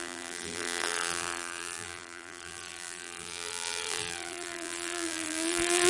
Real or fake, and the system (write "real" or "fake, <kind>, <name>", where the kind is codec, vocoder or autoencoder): fake, vocoder, BigVGAN v2